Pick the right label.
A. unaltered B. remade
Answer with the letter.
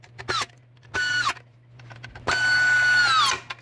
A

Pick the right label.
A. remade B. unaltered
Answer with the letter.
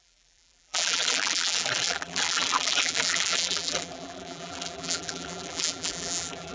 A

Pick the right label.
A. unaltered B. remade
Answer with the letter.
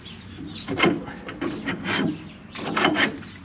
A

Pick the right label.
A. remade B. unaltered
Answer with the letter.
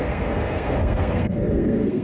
A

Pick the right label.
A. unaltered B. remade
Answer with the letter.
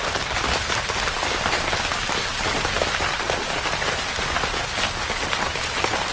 A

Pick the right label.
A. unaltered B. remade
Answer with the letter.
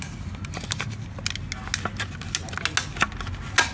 A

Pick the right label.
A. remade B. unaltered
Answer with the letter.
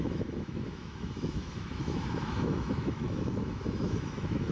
A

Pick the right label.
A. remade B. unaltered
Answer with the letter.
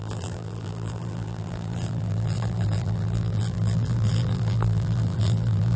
A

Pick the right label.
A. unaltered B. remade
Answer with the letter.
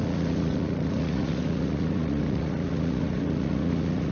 B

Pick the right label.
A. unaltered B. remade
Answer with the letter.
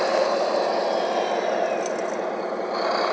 A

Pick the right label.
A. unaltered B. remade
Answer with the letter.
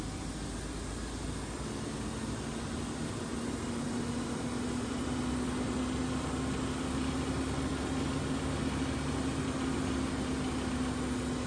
A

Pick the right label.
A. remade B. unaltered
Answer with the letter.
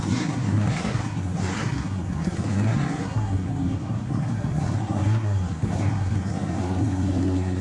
A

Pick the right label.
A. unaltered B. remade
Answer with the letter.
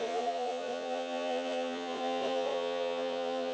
B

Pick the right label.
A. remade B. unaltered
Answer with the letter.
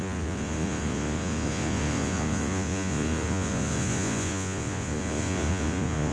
A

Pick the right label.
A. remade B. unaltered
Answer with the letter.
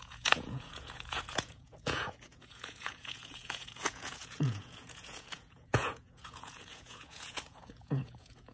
A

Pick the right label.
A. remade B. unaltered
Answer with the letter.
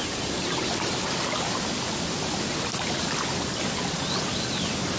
B